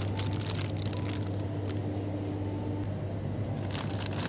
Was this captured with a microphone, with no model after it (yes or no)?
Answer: yes